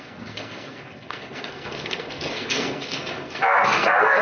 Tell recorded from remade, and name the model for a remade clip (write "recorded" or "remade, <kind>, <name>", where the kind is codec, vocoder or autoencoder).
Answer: remade, codec, SNAC